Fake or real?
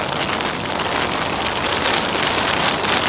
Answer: real